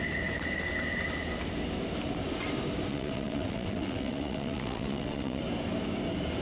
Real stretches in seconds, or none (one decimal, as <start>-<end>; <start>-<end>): 0.0-2.9; 5.4-6.4